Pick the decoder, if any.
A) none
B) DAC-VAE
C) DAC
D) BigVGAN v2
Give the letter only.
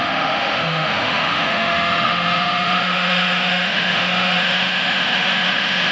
B